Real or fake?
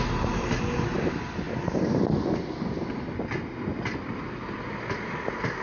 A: real